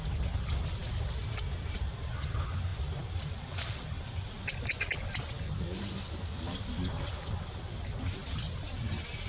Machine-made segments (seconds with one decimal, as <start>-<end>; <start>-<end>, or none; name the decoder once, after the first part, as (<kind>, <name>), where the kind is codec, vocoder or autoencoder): 1.2-1.8 (vocoder, BigVGAN v2); 8.8-9.3